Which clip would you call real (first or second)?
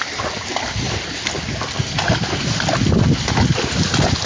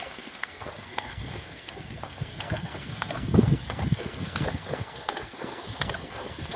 first